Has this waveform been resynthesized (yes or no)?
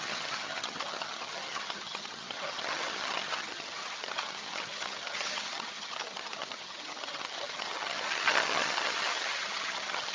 yes